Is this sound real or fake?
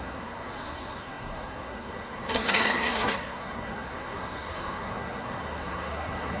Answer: fake